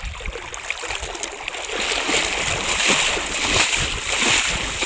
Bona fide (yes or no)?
yes